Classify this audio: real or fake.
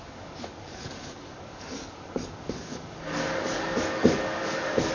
fake